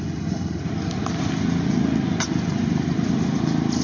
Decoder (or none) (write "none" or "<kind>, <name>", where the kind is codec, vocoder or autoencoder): none